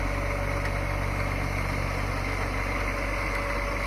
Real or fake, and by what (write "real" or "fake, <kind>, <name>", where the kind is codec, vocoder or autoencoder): real